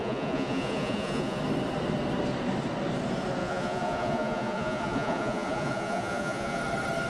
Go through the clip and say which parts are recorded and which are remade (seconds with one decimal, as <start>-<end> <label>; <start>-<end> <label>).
0.0-1.4 remade; 1.4-3.4 recorded; 3.4-6.6 remade; 6.6-7.1 recorded